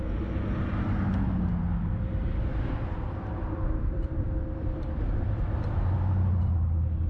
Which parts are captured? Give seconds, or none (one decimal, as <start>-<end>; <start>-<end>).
0.0-1.7; 6.0-7.1